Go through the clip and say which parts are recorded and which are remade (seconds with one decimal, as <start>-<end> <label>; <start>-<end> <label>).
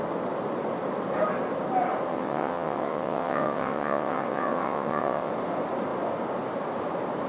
0.0-2.1 recorded; 2.1-5.3 remade; 5.3-7.3 recorded